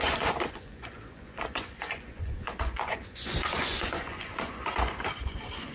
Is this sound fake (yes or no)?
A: yes